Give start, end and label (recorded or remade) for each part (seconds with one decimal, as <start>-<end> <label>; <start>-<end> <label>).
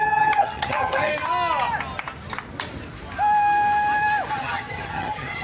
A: 0.0-1.1 remade; 1.1-4.3 recorded; 4.3-5.4 remade